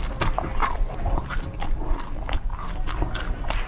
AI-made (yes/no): no